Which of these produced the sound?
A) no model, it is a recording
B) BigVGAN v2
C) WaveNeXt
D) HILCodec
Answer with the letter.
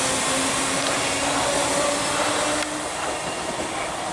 A